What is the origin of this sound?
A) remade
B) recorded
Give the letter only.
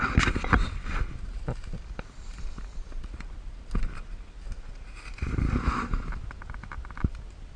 B